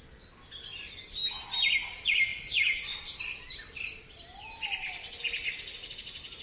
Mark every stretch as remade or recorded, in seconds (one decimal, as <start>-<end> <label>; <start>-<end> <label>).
0.0-6.4 recorded